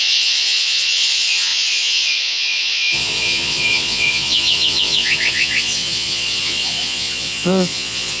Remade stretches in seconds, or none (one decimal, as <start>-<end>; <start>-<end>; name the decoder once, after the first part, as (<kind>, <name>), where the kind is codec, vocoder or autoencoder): 0.0-8.2 (vocoder, Vocos)